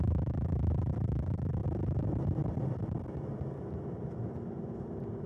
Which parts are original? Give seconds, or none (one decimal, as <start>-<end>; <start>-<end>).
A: 0.0-5.3